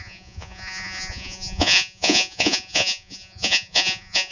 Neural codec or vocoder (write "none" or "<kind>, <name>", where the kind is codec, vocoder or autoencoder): vocoder, Vocos